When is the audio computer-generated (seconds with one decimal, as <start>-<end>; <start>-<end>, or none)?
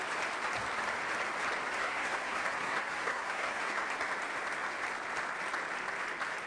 1.8-3.8